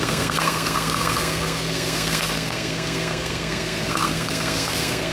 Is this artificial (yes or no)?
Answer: yes